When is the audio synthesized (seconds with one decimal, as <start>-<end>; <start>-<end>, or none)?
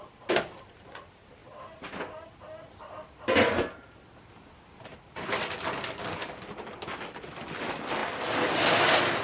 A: none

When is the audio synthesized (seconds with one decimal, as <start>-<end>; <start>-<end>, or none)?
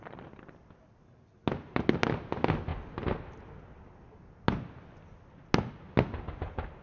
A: none